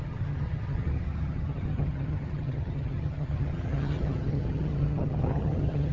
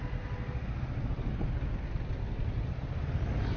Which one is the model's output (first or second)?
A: first